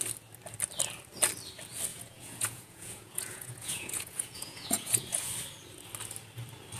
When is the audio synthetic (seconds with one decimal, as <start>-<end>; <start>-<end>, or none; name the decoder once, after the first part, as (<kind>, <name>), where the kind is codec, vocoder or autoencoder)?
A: 1.9-5.3 (vocoder, Vocos)